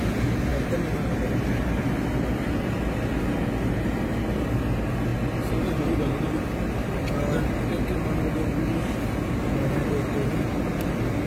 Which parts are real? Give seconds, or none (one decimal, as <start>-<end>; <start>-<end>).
0.0-11.3